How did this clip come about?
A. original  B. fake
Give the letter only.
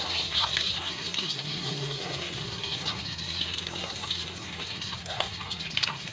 B